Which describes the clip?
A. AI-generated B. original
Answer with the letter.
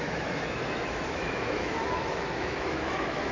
A